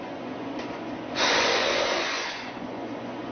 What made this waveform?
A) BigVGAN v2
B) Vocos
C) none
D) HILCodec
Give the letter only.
B